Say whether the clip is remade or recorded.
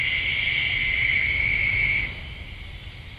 recorded